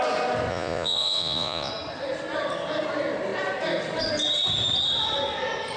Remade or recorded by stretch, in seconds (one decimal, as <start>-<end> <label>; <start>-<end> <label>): 0.0-0.5 recorded; 0.5-1.7 remade; 1.7-5.8 recorded